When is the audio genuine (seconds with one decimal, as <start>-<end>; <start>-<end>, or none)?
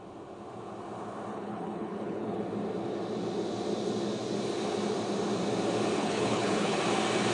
0.0-1.3; 2.4-6.0; 6.8-7.3